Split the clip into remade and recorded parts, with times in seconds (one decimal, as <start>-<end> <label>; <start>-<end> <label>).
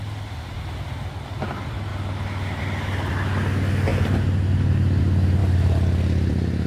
0.0-6.7 recorded